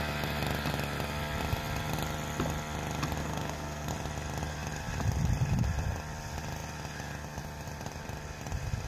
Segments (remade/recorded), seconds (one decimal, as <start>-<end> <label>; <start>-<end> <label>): 0.0-3.2 recorded; 3.2-3.9 remade; 3.9-8.9 recorded